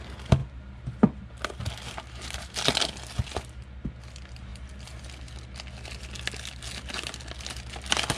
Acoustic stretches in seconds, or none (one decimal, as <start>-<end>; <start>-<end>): 0.0-8.2